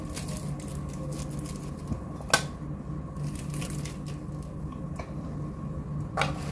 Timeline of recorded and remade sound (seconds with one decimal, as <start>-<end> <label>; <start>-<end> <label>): 0.0-6.5 recorded